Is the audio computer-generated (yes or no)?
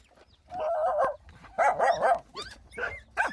no